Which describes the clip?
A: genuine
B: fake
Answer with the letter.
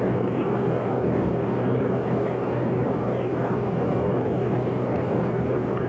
B